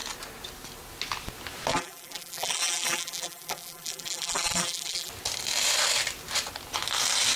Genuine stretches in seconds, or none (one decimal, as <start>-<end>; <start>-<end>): 0.0-1.7; 5.1-7.4

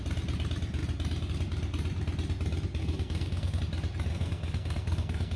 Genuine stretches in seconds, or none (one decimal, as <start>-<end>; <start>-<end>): 0.0-2.8; 3.6-4.1

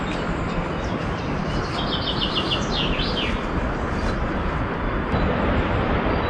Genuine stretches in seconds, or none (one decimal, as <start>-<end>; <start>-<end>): 0.0-6.3

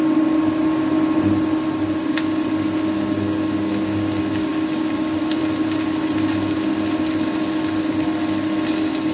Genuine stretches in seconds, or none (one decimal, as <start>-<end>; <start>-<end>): 0.0-9.1